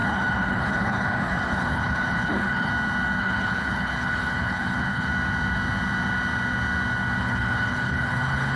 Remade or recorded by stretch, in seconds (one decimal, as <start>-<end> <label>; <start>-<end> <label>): 0.0-2.7 remade; 2.7-3.2 recorded; 3.2-5.1 remade; 5.1-7.2 recorded; 7.2-8.6 remade